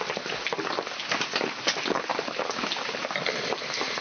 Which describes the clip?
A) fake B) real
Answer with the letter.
B